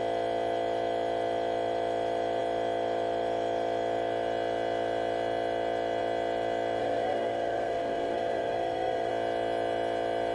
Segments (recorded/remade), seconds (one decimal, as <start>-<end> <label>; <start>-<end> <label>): 0.0-6.8 recorded; 6.8-9.1 remade; 9.1-10.3 recorded